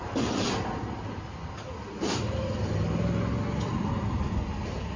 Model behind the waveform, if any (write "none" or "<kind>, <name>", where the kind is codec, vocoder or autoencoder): none